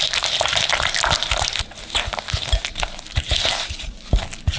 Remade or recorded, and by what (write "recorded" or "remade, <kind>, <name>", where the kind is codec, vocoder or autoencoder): recorded